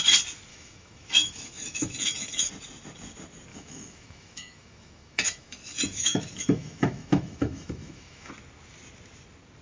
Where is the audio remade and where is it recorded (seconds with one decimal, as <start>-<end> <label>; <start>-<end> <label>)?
0.0-0.5 recorded; 0.5-2.5 remade; 2.5-3.5 recorded; 3.5-8.3 remade; 8.3-9.6 recorded